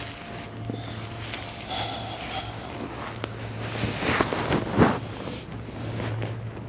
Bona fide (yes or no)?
yes